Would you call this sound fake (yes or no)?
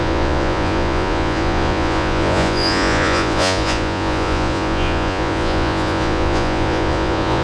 yes